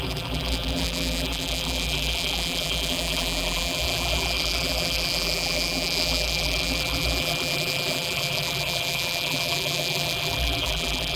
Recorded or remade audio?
remade